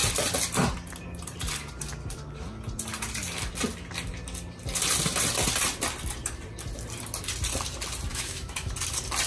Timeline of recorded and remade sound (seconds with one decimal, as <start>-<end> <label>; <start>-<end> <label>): 0.0-8.1 recorded; 8.1-8.7 remade; 8.7-9.3 recorded